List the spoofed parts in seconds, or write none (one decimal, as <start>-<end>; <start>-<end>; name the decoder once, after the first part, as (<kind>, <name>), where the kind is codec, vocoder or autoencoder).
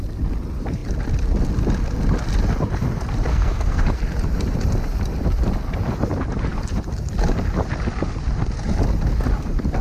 3.3-4.0 (codec, SNAC)